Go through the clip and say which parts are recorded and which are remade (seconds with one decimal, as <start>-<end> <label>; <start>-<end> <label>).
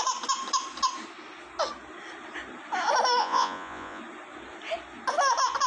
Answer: 0.0-3.2 recorded; 3.2-4.0 remade; 4.0-5.7 recorded